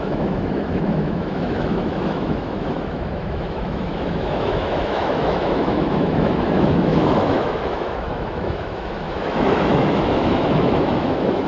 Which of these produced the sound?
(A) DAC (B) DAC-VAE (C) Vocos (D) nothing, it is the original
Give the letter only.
B